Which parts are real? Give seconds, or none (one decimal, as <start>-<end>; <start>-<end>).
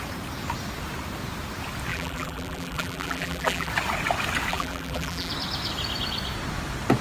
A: 0.0-1.9; 3.7-4.5; 5.3-7.0